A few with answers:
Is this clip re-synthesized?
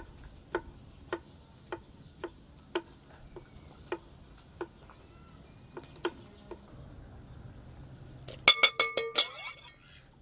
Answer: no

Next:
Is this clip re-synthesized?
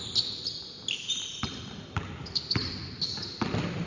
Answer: no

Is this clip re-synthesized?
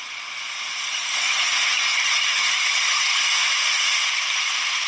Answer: no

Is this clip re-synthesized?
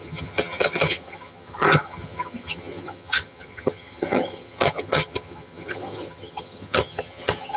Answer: yes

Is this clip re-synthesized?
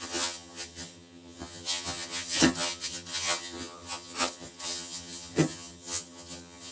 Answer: yes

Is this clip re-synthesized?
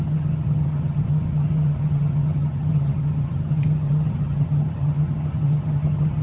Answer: yes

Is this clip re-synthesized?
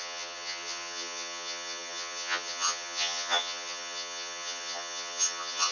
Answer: yes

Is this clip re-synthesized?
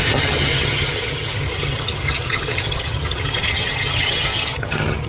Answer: yes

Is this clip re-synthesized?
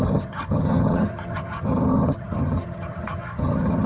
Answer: yes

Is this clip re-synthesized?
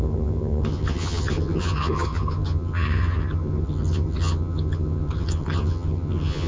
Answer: yes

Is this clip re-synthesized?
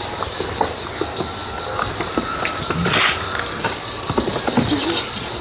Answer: no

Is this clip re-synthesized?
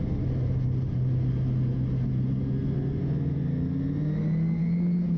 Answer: no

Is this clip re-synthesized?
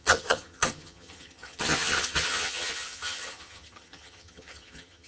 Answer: yes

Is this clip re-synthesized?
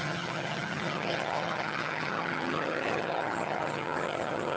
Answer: yes